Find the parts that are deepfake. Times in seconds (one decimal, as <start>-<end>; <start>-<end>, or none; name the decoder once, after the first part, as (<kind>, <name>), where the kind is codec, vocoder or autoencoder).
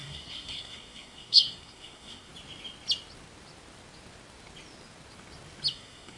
0.0-2.3 (codec, SNAC); 5.7-6.2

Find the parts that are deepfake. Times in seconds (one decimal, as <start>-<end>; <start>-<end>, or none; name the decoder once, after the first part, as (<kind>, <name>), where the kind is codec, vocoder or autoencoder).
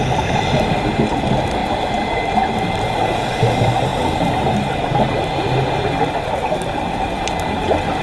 none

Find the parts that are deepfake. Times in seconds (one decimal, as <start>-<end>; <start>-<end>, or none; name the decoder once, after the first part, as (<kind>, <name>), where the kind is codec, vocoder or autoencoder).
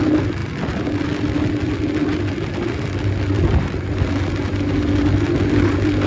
none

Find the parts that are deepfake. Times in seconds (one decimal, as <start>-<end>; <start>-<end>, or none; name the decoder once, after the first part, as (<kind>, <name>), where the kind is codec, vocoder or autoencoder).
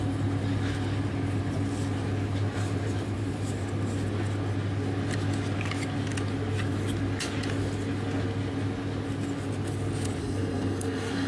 10.2-11.3 (codec, SNAC)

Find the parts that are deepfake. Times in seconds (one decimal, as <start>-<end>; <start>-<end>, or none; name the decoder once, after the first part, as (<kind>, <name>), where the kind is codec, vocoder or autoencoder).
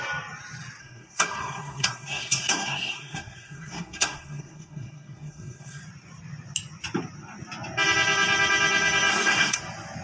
0.8-5.8 (codec, SNAC); 9.1-9.6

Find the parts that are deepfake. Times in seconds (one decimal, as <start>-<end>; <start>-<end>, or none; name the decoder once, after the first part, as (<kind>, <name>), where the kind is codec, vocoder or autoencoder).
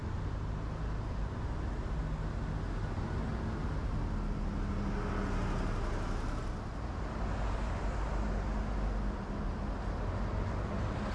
none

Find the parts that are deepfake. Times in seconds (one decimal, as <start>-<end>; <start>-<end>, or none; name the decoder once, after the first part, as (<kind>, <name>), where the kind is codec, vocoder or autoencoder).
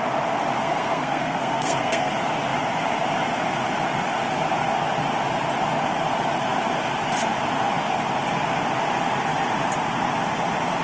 0.6-2.1 (codec, SNAC)